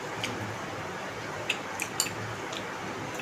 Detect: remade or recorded recorded